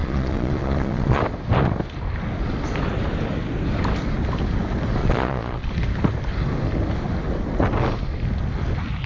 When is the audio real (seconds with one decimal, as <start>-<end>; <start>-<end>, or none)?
1.2-5.0; 5.7-9.1